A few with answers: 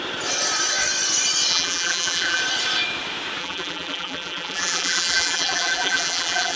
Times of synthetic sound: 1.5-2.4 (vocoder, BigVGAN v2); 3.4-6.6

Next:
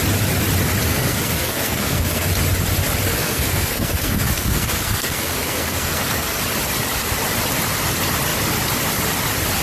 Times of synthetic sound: 0.9-2.3 (codec, SNAC); 3.1-6.4